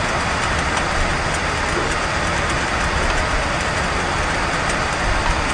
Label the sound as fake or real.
fake